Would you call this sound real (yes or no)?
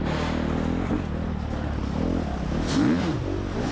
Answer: yes